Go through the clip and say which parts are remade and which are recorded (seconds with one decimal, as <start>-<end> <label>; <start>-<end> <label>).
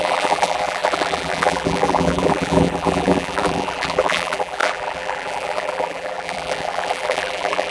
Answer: 0.0-7.7 remade